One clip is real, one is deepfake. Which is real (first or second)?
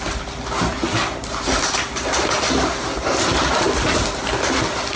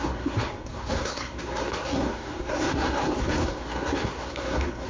first